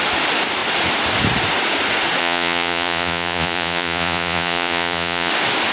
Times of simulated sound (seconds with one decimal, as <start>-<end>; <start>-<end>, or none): 2.2-5.3